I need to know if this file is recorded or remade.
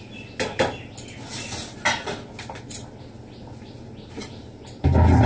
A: recorded